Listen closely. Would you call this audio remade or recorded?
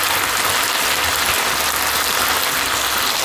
recorded